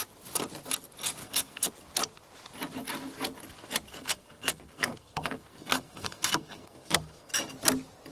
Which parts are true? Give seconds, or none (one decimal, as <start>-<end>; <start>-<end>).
0.0-1.2; 1.7-3.9; 7.3-8.1